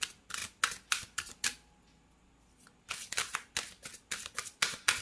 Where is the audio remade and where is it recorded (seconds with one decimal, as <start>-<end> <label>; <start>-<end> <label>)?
0.0-5.0 recorded